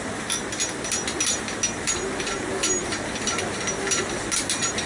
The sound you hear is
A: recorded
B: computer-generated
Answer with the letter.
A